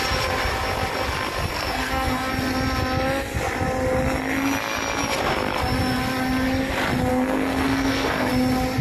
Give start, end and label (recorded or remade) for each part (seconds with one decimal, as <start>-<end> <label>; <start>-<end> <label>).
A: 0.0-1.5 recorded; 1.5-2.3 remade; 2.3-7.1 recorded; 7.1-8.3 remade; 8.3-8.8 recorded